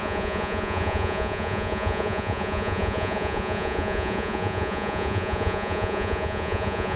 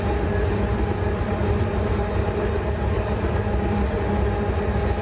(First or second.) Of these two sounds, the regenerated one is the first